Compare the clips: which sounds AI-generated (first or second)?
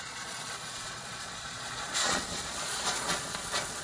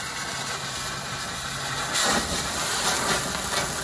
first